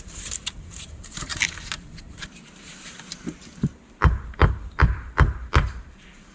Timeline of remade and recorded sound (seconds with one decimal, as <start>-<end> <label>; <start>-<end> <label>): 0.0-6.3 remade